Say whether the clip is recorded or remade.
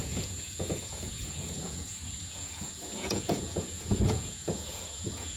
remade